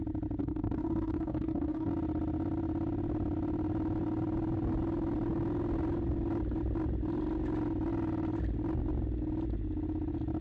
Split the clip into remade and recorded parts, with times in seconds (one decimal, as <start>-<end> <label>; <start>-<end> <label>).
0.0-0.4 recorded; 0.4-1.9 remade; 1.9-10.4 recorded